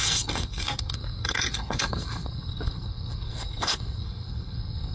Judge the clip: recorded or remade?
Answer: remade